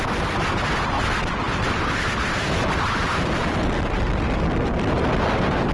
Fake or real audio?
real